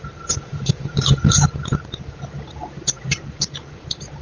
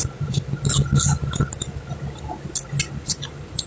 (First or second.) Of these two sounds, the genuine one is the second